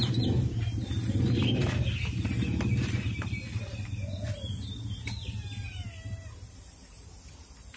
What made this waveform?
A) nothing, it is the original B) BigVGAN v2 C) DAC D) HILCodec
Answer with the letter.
A